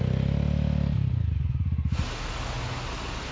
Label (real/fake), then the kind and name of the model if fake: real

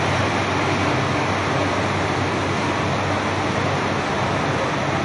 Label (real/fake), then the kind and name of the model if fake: real